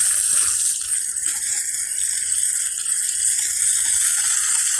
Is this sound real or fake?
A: real